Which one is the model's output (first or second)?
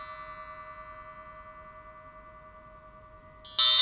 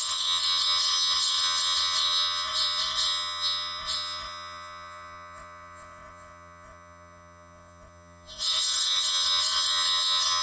second